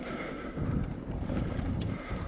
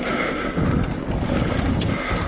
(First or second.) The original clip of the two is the second